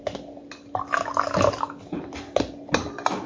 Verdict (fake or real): real